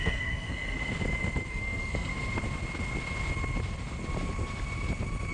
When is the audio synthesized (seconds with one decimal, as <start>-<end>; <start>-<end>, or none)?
0.0-0.8; 1.5-2.1